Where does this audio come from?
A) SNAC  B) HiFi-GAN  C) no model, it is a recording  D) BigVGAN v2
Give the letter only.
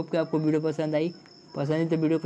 C